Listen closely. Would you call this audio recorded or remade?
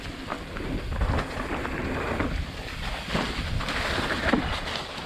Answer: recorded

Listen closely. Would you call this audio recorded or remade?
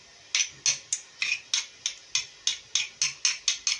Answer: recorded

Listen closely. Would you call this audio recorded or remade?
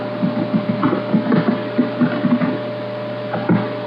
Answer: recorded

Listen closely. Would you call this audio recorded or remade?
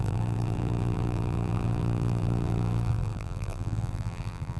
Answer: remade